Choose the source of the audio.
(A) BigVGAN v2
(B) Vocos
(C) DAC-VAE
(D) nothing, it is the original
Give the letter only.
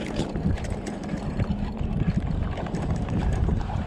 A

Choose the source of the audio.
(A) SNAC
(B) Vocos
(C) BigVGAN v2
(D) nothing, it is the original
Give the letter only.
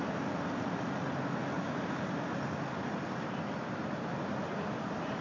D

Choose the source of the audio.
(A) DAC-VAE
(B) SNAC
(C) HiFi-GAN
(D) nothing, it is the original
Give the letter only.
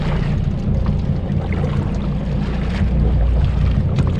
D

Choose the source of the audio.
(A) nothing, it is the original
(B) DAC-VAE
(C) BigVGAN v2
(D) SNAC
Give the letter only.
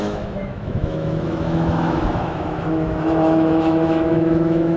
B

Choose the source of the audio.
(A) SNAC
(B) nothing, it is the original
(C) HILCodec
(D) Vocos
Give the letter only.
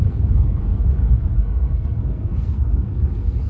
A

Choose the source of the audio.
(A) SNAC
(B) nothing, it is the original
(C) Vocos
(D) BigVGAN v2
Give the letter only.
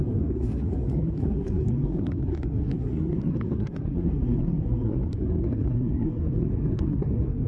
A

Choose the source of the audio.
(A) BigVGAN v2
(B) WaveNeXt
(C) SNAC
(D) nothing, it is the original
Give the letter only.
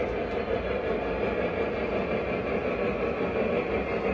D